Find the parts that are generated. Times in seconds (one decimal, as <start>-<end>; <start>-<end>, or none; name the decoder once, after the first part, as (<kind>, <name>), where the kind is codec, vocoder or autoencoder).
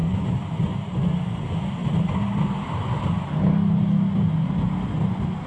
none